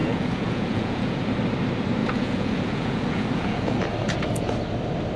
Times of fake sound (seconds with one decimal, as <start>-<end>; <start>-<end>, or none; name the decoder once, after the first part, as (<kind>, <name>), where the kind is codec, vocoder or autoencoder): 0.0-1.3 (vocoder, Vocos); 2.0-3.8